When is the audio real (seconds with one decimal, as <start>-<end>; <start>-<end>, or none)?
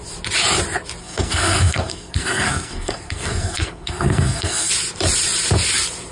0.0-1.0; 4.7-6.1